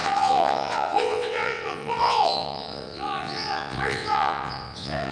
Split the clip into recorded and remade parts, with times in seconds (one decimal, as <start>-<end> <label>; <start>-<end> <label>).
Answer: 0.0-5.1 remade